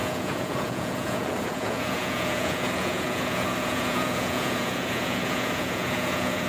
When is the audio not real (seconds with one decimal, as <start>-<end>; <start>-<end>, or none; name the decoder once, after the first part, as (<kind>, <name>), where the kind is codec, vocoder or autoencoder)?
0.0-6.5 (vocoder, Vocos)